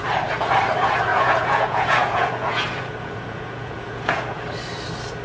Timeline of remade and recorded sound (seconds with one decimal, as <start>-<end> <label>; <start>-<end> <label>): 0.0-1.1 recorded; 1.1-4.2 remade; 4.2-5.2 recorded